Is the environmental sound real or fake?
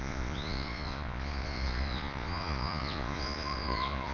fake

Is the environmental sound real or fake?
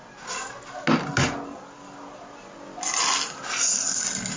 real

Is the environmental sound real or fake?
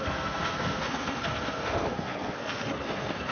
fake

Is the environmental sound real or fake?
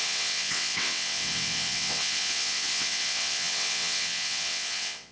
fake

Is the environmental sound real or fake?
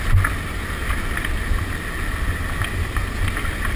real